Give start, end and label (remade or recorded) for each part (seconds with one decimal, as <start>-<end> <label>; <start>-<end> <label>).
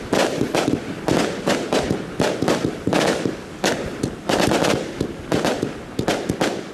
0.0-2.9 recorded; 2.9-3.7 remade; 3.7-6.7 recorded